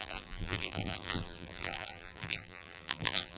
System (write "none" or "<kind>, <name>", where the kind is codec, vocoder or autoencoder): vocoder, BigVGAN v2